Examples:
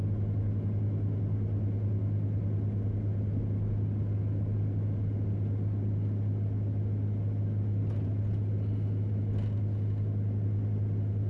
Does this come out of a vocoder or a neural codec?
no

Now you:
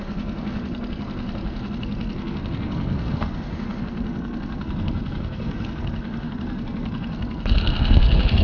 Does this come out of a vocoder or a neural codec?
yes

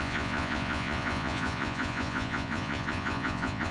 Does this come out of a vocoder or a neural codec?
yes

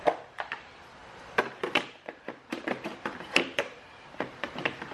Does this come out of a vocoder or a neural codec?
yes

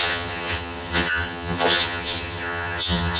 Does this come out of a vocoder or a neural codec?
yes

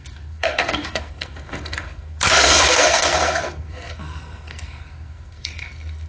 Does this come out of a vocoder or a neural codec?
yes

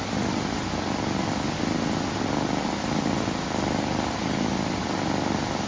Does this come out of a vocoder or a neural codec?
no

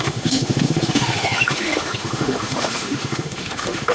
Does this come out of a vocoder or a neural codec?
yes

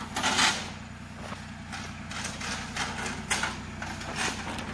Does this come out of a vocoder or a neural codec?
no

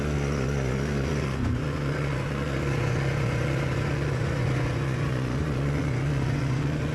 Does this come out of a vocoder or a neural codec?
yes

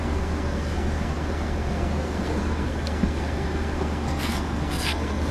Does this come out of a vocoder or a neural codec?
yes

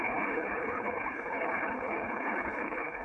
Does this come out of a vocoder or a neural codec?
yes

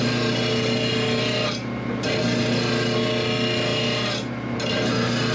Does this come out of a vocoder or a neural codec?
no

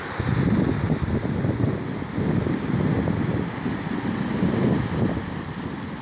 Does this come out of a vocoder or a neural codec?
no